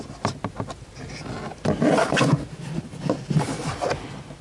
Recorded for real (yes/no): yes